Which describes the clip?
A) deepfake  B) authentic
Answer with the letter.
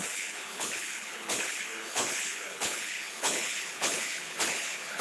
A